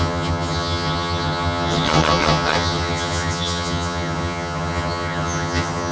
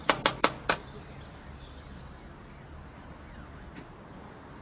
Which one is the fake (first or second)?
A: first